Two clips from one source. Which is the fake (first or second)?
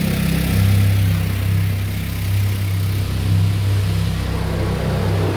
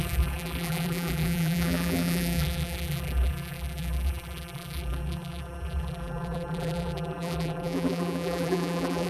second